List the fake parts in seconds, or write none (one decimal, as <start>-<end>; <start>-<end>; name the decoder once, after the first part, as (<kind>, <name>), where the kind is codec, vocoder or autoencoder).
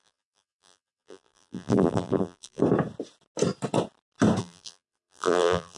0.0-2.6 (vocoder, BigVGAN v2); 4.4-5.8